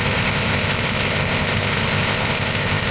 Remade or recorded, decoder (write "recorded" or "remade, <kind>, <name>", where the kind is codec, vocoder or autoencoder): remade, codec, ZipCodec